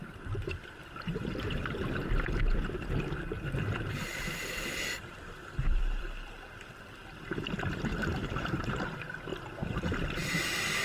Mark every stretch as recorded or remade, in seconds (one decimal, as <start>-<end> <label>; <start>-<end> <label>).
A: 0.0-3.6 remade; 3.6-4.1 recorded; 4.1-8.6 remade; 8.6-9.3 recorded; 9.3-10.4 remade; 10.4-10.8 recorded